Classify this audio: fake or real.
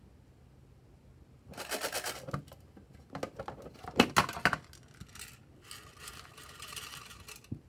real